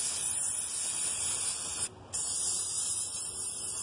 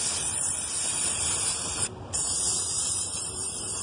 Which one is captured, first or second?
first